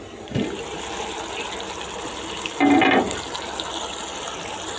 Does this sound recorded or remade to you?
recorded